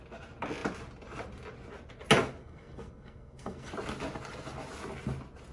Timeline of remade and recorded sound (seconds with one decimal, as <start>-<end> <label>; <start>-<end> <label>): 0.0-2.4 recorded; 2.4-3.7 remade; 3.7-5.5 recorded